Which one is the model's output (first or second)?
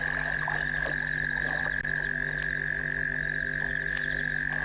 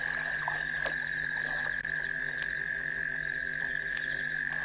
second